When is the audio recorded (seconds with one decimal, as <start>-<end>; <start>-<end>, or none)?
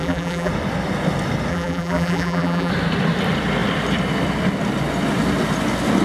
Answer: 0.5-1.5; 2.7-6.0